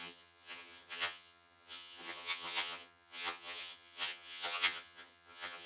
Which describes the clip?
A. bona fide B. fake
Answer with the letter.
B